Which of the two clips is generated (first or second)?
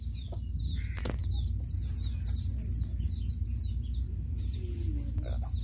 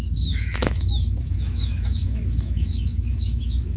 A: second